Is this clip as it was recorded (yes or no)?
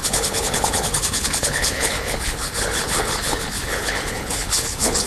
no